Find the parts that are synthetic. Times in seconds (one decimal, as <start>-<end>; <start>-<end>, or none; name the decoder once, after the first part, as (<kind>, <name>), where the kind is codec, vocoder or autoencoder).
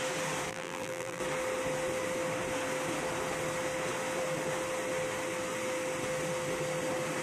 0.5-1.2 (vocoder, BigVGAN v2)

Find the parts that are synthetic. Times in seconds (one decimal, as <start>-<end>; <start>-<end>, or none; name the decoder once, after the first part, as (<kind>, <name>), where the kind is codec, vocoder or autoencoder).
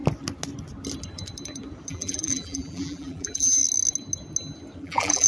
1.9-3.6 (vocoder, BigVGAN v2); 4.8-5.3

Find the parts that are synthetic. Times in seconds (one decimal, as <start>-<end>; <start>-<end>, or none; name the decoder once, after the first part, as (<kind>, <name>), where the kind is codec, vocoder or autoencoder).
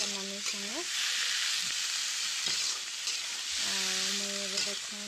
none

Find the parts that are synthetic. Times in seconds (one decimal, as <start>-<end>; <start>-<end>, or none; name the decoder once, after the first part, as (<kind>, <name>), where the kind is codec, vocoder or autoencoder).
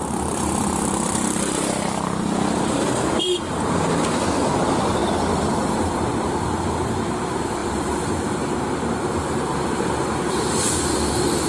0.0-11.5 (vocoder, BigVGAN v2)